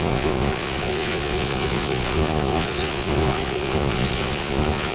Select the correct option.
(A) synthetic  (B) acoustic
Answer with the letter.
A